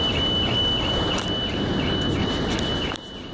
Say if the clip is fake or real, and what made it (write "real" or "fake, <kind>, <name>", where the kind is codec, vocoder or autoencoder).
real